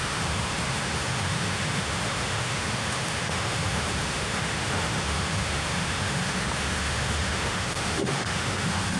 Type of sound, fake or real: fake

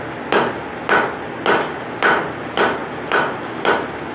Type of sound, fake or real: real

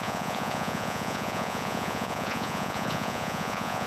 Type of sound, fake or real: fake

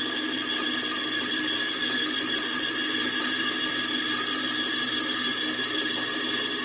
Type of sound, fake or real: real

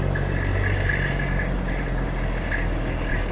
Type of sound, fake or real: real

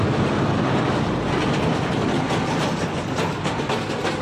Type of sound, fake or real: real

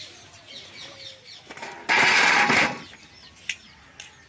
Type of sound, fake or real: real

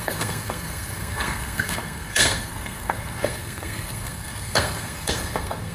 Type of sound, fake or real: fake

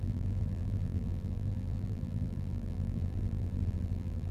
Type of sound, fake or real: fake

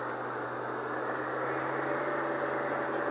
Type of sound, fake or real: real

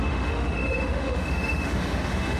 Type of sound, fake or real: fake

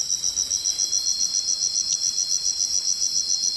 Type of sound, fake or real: real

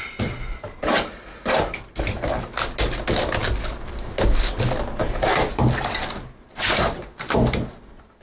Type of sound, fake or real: real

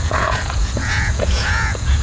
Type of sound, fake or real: fake